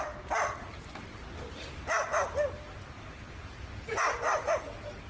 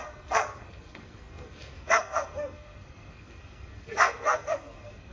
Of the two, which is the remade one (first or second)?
second